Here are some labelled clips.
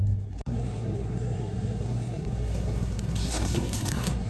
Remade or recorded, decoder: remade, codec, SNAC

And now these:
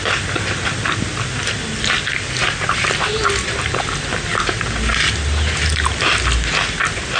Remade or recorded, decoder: recorded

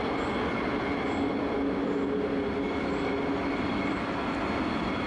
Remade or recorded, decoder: recorded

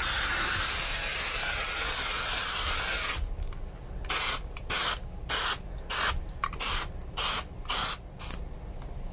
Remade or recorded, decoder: recorded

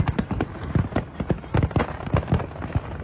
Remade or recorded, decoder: recorded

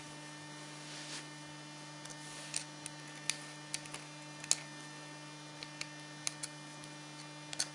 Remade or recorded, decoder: recorded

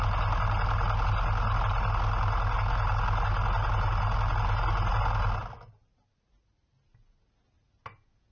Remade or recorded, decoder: recorded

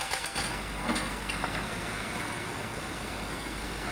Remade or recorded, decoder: remade, codec, SNAC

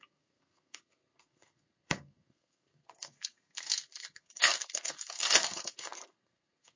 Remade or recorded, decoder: remade, codec, SNAC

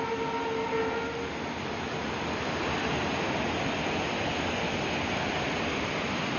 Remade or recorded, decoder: recorded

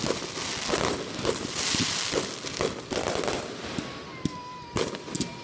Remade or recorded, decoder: recorded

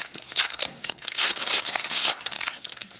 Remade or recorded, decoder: remade, codec, SNAC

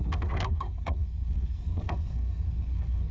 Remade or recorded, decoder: remade, codec, SNAC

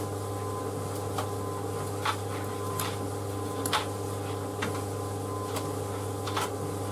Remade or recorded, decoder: recorded